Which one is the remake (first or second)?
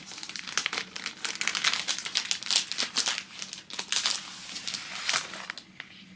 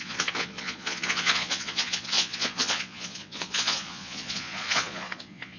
second